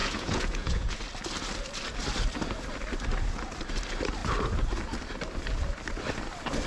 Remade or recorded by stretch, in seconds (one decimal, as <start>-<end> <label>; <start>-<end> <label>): 0.0-1.0 remade; 1.0-6.7 recorded